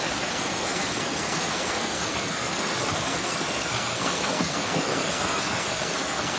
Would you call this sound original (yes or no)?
no